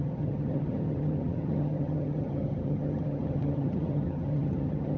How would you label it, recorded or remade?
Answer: remade